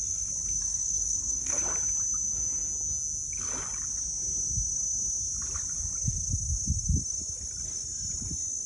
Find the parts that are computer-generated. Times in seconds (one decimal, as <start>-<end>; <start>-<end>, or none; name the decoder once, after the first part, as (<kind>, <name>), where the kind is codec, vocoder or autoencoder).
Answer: 0.6-1.6 (codec, SNAC)